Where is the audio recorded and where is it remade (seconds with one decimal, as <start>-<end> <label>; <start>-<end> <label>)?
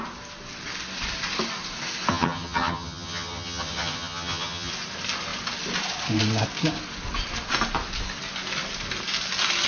0.0-2.1 recorded; 2.1-4.7 remade; 4.7-9.7 recorded